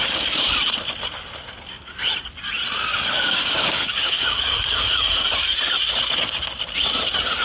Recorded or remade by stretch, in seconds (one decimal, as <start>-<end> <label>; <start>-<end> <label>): 0.0-2.9 recorded; 2.9-5.4 remade; 5.4-7.4 recorded